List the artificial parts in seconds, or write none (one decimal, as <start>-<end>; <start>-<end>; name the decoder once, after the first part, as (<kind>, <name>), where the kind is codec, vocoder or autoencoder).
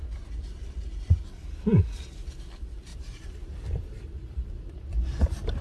2.9-5.6 (vocoder, BigVGAN v2)